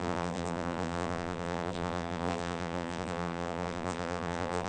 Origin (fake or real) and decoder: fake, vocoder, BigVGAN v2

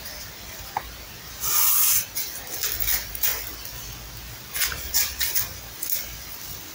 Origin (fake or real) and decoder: real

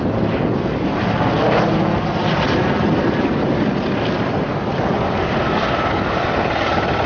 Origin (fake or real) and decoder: real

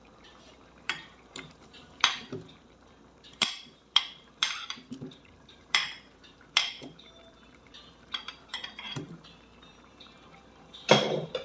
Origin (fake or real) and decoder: fake, vocoder, BigVGAN v2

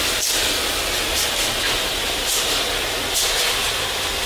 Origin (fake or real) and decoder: real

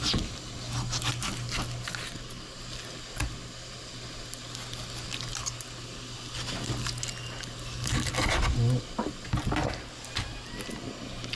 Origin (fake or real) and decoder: real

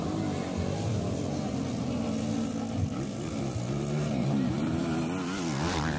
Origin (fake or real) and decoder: real